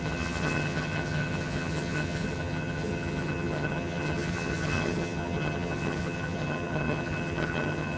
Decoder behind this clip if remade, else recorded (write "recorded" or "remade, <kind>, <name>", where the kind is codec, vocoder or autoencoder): remade, vocoder, HiFi-GAN